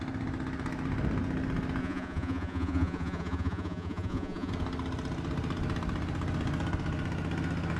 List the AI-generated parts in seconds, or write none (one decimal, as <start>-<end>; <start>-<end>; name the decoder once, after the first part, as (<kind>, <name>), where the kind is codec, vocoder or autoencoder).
1.8-4.5 (vocoder, Vocos)